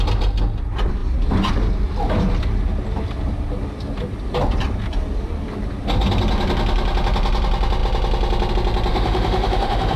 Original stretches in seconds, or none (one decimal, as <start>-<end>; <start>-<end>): 0.0-8.9